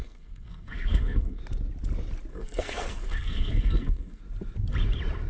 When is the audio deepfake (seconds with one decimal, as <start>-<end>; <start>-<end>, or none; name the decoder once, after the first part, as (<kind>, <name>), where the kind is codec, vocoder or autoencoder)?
0.0-1.4 (codec, SNAC); 2.3-4.2